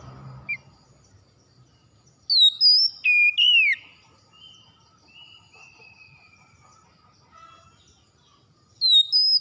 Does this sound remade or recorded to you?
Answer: recorded